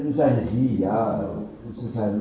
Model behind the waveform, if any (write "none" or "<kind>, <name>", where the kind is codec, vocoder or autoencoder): codec, DAC